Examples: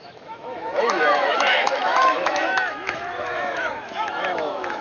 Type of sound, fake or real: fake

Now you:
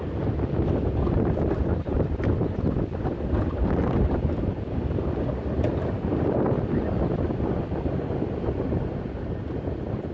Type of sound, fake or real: real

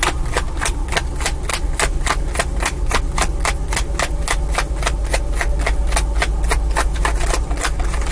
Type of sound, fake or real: real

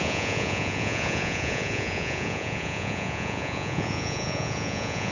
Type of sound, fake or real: fake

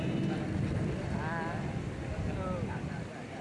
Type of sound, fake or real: real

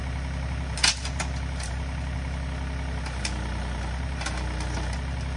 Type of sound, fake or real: real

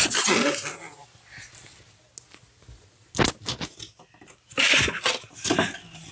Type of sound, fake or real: real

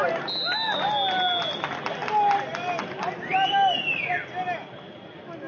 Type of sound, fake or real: real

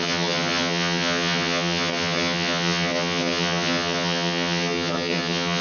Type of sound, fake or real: fake